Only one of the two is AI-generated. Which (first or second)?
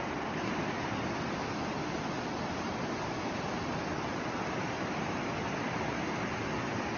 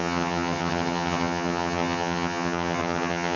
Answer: second